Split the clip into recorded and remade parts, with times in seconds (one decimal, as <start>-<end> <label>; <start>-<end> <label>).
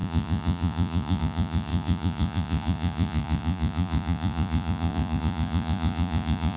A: 0.0-6.6 remade